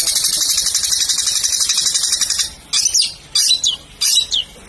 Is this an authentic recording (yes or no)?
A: yes